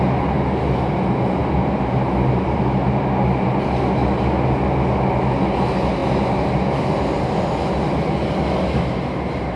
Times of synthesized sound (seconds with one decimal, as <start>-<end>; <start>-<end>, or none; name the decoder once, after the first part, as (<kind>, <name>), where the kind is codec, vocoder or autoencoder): none